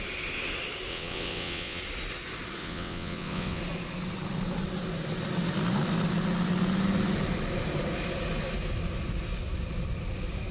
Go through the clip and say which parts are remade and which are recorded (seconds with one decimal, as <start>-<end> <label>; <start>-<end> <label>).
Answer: 0.0-0.9 recorded; 0.9-1.8 remade; 1.8-2.6 recorded; 2.6-3.6 remade; 3.6-10.5 recorded